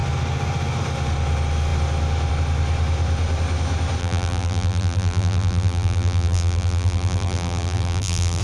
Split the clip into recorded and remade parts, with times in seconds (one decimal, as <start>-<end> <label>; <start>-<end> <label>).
0.0-4.0 recorded; 4.0-8.4 remade